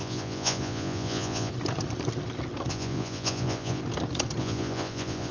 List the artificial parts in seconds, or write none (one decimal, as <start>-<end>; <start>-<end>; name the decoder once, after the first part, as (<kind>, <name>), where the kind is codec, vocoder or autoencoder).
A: 0.0-1.5 (vocoder, Vocos); 2.7-3.8; 4.4-5.3